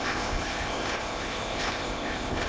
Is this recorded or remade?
remade